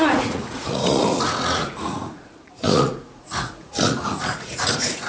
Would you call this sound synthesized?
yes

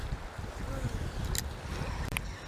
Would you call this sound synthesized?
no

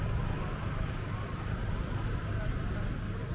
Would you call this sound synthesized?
no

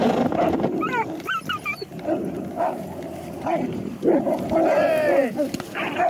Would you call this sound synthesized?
yes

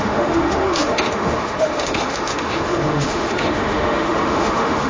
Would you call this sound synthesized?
yes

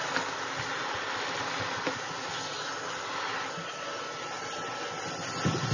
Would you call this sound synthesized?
no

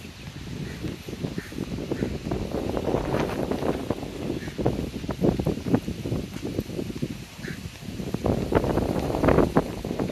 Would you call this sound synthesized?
no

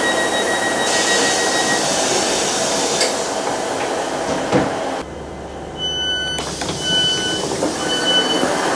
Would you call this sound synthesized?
no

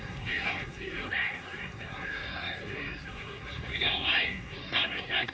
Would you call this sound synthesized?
yes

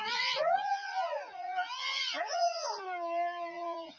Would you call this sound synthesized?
yes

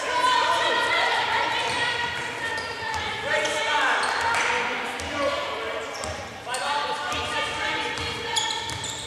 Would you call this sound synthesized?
yes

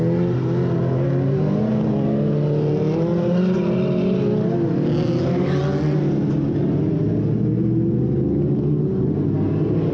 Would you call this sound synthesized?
no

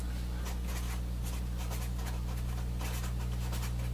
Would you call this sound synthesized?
no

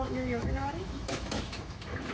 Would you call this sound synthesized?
yes